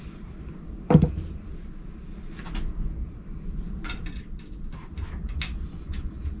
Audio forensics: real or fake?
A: real